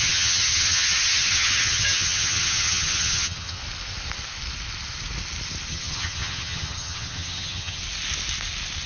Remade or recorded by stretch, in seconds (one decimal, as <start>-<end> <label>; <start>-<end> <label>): 0.0-3.6 remade; 3.6-5.7 recorded; 5.7-7.8 remade; 7.8-8.9 recorded